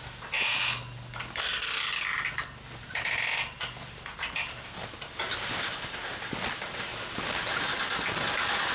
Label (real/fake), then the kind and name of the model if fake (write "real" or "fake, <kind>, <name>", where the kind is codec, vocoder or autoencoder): real